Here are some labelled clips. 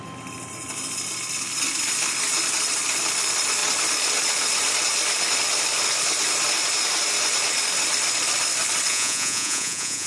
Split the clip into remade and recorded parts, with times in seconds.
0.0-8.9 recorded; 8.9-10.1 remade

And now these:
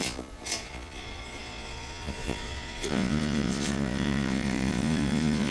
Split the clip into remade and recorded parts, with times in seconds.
0.0-5.5 remade

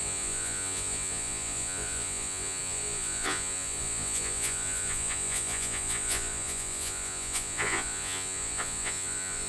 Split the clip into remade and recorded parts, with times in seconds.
0.0-9.5 remade

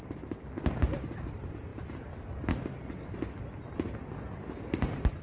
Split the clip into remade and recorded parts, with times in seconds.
0.0-5.2 recorded

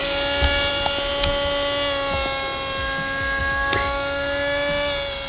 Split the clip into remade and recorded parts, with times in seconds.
0.0-5.3 recorded